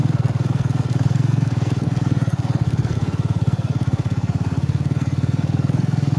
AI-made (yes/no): yes